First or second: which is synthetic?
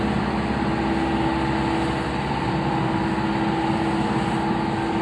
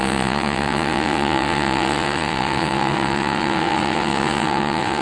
second